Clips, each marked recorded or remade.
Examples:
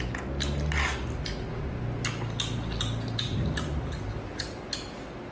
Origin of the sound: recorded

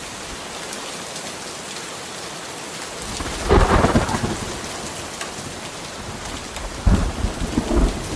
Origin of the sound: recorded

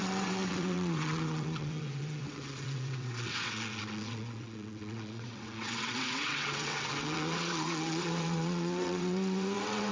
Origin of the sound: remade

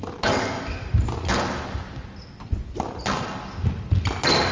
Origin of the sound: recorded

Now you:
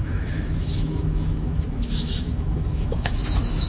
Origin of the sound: remade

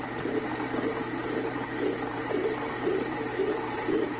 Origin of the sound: remade